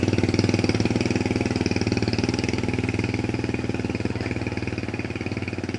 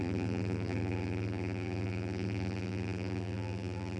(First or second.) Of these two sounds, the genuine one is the first